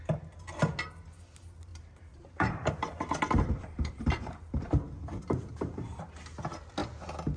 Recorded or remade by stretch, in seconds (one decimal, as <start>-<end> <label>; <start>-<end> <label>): 0.0-1.7 recorded; 1.7-6.0 remade; 6.0-7.4 recorded